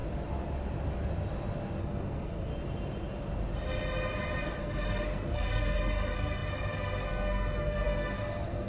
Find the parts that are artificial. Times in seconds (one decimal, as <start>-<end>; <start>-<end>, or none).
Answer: 1.8-2.5; 4.6-8.7